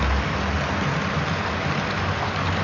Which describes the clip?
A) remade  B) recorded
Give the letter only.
B